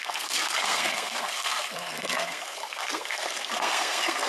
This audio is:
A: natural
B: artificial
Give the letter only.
B